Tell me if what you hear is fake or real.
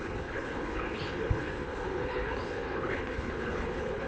fake